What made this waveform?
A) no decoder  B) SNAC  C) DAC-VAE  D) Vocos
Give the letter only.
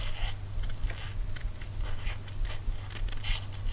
A